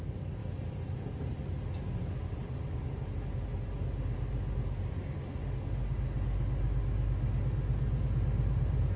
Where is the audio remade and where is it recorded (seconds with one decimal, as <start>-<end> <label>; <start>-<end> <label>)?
0.0-9.0 recorded